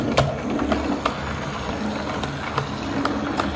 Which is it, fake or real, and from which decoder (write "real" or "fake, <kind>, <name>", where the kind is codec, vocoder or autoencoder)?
real